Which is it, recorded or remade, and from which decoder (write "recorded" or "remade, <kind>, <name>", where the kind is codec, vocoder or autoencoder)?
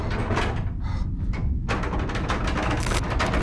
recorded